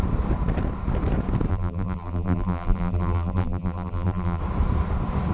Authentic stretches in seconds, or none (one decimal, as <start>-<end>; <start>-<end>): 0.0-1.5; 4.4-5.3